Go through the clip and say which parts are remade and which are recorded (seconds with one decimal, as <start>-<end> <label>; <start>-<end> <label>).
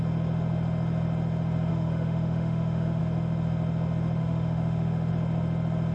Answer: 0.0-1.7 recorded; 1.7-3.0 remade; 3.0-4.2 recorded; 4.2-5.1 remade; 5.1-5.9 recorded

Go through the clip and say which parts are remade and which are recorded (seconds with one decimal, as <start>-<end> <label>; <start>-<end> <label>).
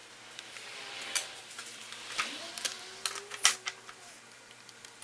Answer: 0.0-5.0 recorded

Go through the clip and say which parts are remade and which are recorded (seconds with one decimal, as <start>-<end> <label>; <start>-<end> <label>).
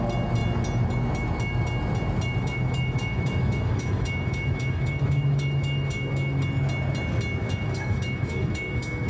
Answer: 0.0-2.4 recorded; 2.4-6.4 remade; 6.4-7.4 recorded; 7.4-9.1 remade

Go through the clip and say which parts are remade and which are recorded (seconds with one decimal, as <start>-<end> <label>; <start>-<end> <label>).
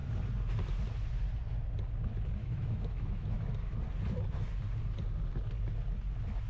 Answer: 0.0-2.4 recorded; 2.4-3.8 remade; 3.8-6.5 recorded